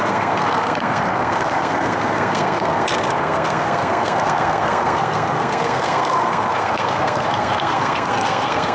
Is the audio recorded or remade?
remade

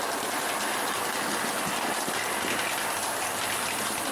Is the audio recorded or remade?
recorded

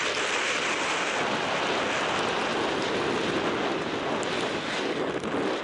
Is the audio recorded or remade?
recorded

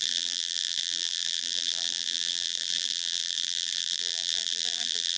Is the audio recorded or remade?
remade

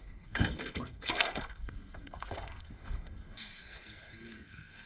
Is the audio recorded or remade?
remade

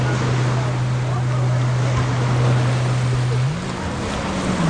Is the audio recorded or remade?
recorded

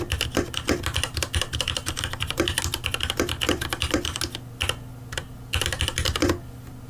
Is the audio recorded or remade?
recorded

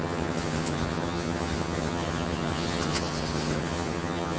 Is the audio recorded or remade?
remade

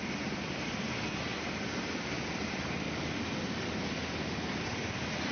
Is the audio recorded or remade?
recorded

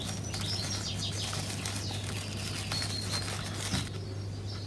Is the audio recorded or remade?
recorded